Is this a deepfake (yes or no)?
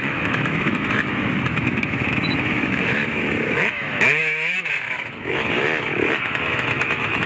yes